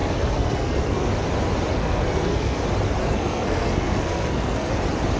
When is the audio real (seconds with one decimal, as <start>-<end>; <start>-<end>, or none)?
1.1-1.7; 2.6-3.0; 4.7-5.2